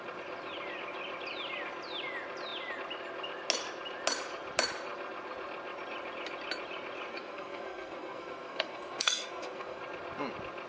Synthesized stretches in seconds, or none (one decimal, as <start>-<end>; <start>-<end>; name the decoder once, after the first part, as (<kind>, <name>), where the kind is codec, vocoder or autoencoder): 7.1-9.8 (codec, SNAC)